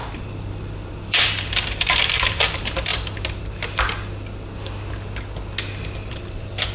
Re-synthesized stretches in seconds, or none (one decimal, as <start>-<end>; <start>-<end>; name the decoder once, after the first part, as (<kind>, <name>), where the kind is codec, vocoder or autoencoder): 0.0-2.9 (vocoder, BigVGAN v2); 6.1-6.7